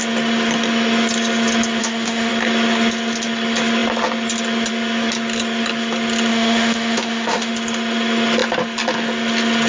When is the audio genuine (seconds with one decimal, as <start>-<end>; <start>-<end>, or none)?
0.0-1.8; 2.3-6.3; 7.5-9.7